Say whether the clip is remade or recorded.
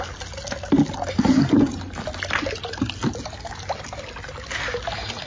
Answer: recorded